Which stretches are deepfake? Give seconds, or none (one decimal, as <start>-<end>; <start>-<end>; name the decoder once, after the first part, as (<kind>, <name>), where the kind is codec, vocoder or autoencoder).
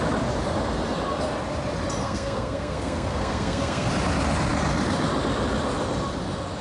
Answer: 2.0-3.9 (codec, SNAC)